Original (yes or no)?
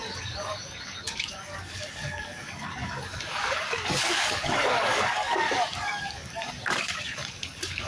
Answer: no